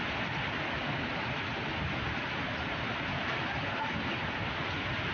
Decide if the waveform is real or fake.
real